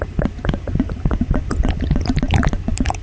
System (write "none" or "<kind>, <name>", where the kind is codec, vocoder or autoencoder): none